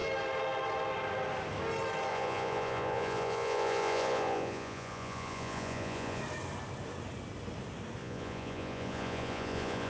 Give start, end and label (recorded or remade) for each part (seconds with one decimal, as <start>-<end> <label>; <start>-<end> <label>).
0.0-2.1 recorded; 2.1-6.2 remade; 6.2-8.0 recorded; 8.0-9.9 remade